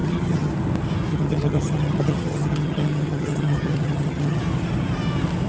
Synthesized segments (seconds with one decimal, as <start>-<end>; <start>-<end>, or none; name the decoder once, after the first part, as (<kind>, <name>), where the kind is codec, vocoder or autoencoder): 0.0-0.5 (vocoder, HiFi-GAN); 1.1-4.4